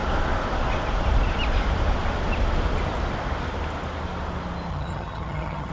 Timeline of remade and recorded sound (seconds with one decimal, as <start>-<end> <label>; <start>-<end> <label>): 0.0-4.7 recorded; 4.7-5.7 remade